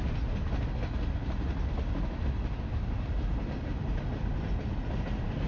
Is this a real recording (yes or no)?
yes